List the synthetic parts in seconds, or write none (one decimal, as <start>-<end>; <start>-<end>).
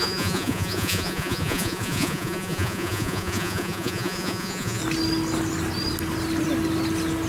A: 0.0-4.8